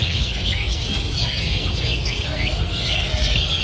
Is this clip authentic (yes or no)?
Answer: no